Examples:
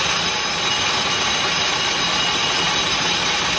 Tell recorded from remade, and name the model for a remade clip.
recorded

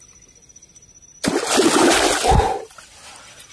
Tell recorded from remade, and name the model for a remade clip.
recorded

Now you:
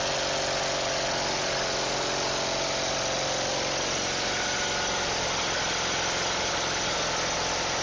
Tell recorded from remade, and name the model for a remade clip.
recorded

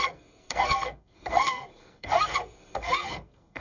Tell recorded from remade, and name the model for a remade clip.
remade, codec, SNAC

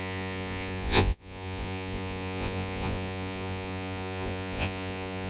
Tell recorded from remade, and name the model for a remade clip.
remade, vocoder, Vocos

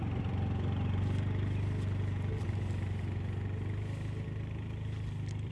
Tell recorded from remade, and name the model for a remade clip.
remade, vocoder, BigVGAN v2